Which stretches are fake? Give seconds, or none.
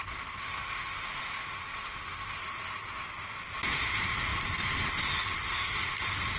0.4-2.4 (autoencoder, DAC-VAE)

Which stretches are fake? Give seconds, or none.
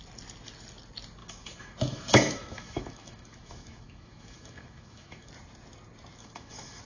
1.2-5.3 (autoencoder, DAC-VAE); 6.2-6.8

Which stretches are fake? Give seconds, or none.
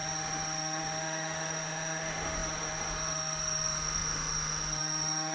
0.0-5.3 (autoencoder, DAC-VAE)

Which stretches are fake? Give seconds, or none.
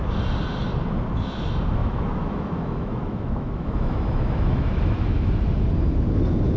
1.8-5.3 (autoencoder, DAC-VAE)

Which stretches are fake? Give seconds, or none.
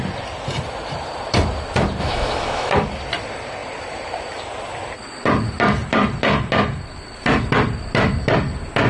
2.0-2.7 (autoencoder, DAC-VAE)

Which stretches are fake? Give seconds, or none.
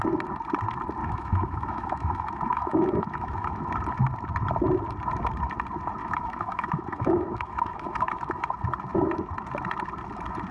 1.0-3.5 (autoencoder, DAC-VAE); 6.0-8.5